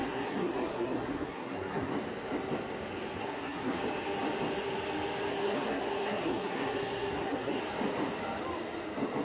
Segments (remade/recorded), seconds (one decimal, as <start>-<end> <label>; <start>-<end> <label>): 0.0-1.9 remade; 1.9-3.2 recorded; 3.2-3.8 remade; 3.8-5.3 recorded; 5.3-7.6 remade; 7.6-9.2 recorded